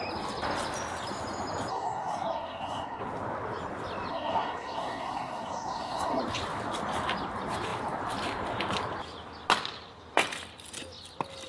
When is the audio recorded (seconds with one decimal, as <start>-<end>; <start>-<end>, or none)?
0.0-1.7; 3.0-4.1; 6.2-11.5